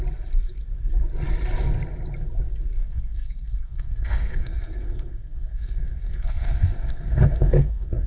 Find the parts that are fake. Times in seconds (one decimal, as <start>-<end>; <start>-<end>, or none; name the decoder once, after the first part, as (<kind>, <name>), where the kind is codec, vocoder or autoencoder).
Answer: 2.8-8.1 (codec, SNAC)